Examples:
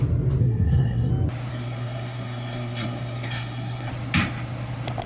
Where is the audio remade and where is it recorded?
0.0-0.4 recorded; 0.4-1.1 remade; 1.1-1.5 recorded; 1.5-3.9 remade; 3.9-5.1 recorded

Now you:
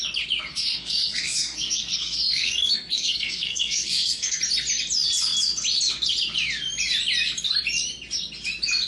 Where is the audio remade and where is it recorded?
0.0-0.5 recorded; 0.5-4.4 remade; 4.4-8.9 recorded

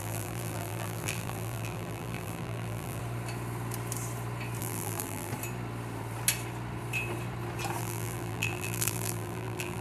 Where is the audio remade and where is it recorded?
0.0-3.0 remade; 3.0-4.6 recorded; 4.6-5.3 remade; 5.3-7.8 recorded; 7.8-9.8 remade

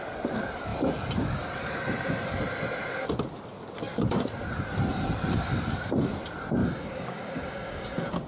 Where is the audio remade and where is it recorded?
0.0-6.6 recorded; 6.6-8.3 remade

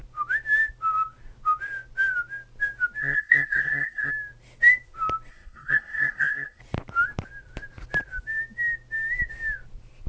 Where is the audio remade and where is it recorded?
0.0-3.0 recorded; 3.0-4.1 remade; 4.1-5.3 recorded; 5.3-6.6 remade; 6.6-10.1 recorded

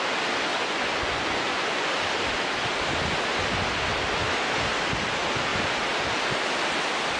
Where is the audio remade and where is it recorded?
0.0-0.5 recorded; 0.5-1.9 remade; 1.9-7.2 recorded

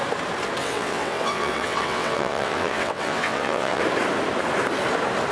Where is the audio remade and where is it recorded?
0.0-0.6 recorded; 0.6-3.8 remade; 3.8-5.3 recorded